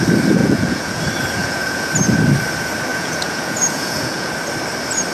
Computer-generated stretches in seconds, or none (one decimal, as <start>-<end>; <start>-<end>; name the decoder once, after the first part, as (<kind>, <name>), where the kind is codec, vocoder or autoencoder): 0.4-1.0 (vocoder, Vocos); 1.4-1.9; 2.9-4.3